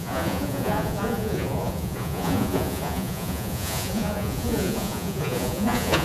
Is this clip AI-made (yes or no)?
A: yes